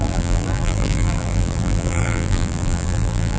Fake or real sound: fake